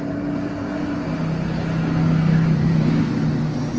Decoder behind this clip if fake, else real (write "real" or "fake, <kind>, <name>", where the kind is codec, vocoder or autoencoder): real